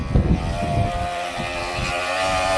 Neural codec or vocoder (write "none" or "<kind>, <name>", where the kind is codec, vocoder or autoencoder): vocoder, BigVGAN v2